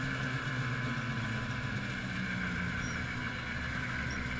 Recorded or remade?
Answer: recorded